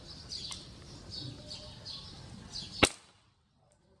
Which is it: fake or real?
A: real